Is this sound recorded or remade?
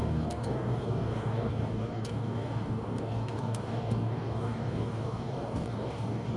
remade